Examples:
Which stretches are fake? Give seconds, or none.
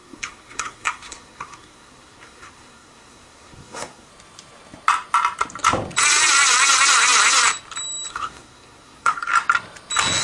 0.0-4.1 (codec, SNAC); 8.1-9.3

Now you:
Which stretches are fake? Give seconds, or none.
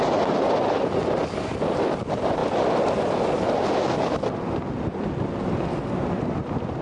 none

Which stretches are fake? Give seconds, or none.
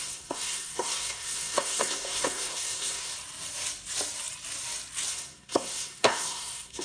0.0-3.1 (codec, SNAC); 5.1-6.8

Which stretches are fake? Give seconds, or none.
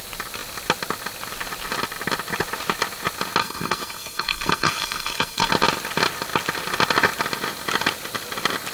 3.4-5.5 (codec, SNAC)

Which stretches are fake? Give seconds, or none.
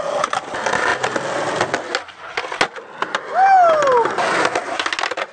none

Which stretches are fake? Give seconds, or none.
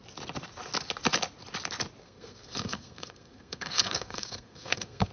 2.0-5.1 (codec, SNAC)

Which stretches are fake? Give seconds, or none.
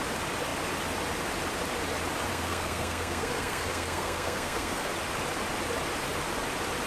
2.3-4.9 (codec, SNAC)